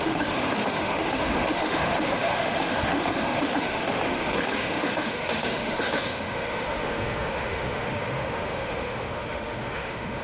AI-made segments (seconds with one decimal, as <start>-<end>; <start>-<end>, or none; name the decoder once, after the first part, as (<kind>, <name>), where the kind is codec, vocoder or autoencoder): 0.0-10.2 (autoencoder, DAC-VAE)